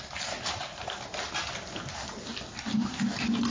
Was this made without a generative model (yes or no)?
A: yes